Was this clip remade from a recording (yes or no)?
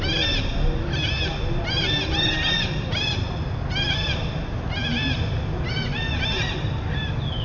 no